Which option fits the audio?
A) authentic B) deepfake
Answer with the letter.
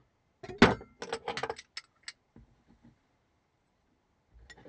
A